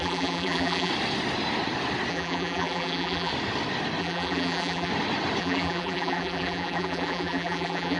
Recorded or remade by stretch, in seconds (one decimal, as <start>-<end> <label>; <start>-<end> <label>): 0.0-0.9 remade; 0.9-2.1 recorded; 2.1-3.3 remade; 3.3-4.0 recorded; 4.0-4.9 remade; 4.9-5.4 recorded; 5.4-8.0 remade